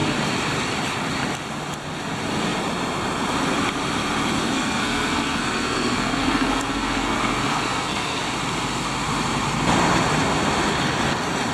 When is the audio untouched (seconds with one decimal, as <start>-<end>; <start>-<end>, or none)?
0.0-4.4; 8.2-11.5